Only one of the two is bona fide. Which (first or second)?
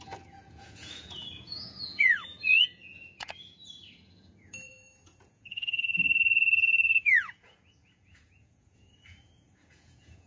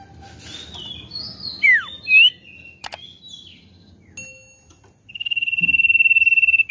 second